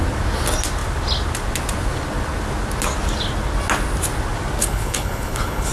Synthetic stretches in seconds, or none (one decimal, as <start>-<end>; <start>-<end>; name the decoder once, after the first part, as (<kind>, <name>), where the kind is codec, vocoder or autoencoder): 4.6-5.7 (codec, HILCodec)